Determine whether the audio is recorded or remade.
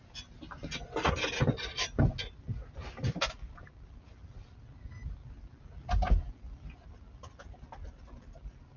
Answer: recorded